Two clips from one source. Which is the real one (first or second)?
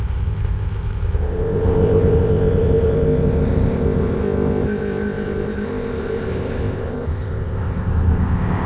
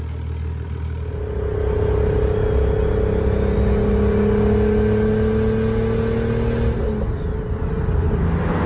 second